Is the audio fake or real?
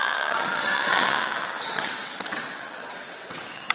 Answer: fake